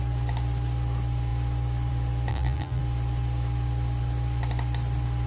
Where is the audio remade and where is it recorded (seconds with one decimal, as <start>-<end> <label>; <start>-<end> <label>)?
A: 0.0-2.3 recorded; 2.3-2.8 remade; 2.8-5.3 recorded